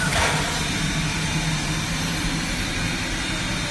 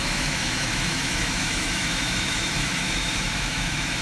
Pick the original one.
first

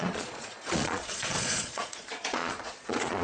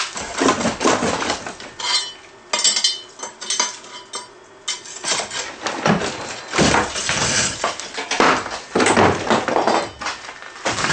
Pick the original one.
second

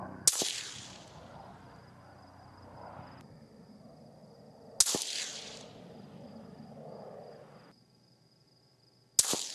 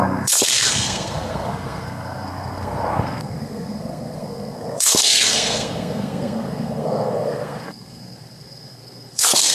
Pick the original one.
first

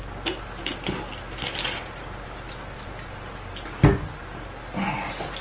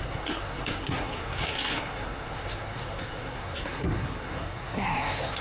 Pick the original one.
first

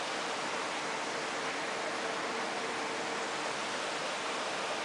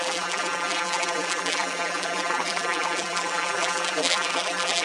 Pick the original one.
first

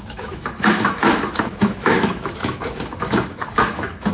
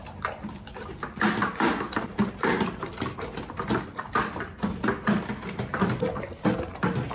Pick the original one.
second